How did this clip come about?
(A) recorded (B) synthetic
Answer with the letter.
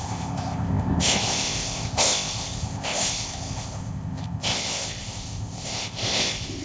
B